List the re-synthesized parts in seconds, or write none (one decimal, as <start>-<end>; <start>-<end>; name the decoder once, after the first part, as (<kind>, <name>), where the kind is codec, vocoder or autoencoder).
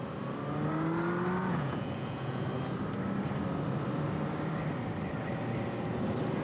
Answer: 1.4-2.4 (vocoder, Vocos)